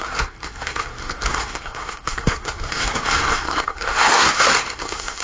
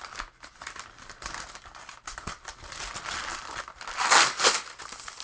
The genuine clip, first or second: second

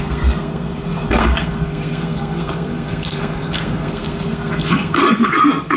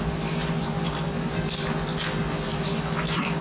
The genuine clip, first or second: second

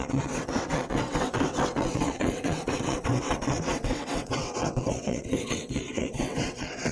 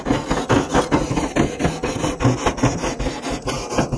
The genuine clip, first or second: second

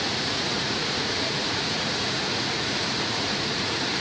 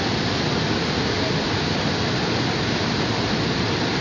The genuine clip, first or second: second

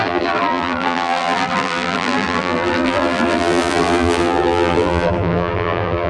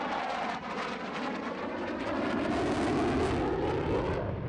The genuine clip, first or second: second